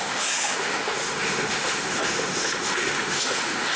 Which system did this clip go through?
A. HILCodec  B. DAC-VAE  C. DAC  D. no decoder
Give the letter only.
B